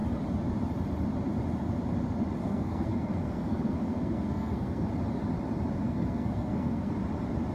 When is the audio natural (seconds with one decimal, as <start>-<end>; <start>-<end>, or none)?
0.0-2.4; 4.9-5.8; 6.9-7.5